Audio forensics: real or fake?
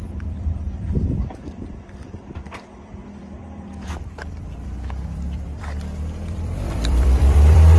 fake